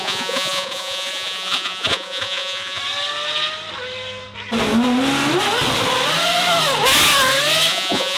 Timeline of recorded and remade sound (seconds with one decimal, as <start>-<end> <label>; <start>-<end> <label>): 0.0-2.8 remade; 2.8-7.7 recorded; 7.7-8.2 remade